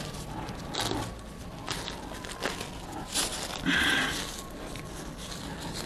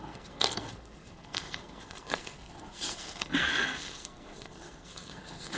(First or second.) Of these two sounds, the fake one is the second